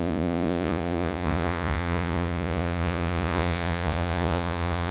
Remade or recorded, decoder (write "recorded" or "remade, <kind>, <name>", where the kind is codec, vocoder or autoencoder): remade, vocoder, Vocos